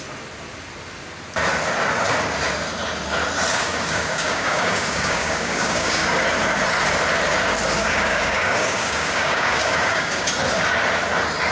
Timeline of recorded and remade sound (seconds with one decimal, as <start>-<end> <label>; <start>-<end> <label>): 0.0-3.5 recorded; 3.5-6.2 remade; 6.2-7.8 recorded; 7.8-10.3 remade; 10.3-11.5 recorded